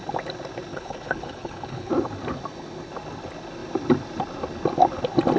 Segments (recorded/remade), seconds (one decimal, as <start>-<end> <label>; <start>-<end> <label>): 0.0-0.7 recorded; 0.7-1.9 remade; 1.9-5.4 recorded